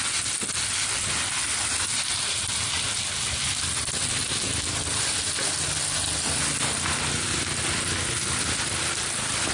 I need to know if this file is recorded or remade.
recorded